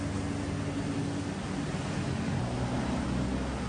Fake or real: real